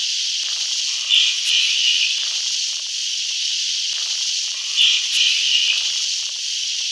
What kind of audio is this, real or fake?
fake